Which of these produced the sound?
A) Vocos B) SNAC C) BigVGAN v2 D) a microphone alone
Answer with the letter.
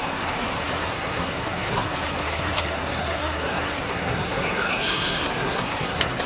B